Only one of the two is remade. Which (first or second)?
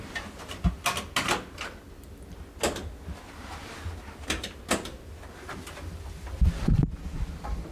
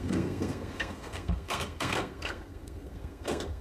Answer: second